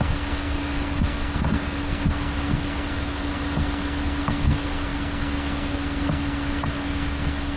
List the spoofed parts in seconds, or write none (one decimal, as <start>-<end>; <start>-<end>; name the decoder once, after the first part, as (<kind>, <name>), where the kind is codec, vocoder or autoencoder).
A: 0.0-7.6 (codec, SNAC)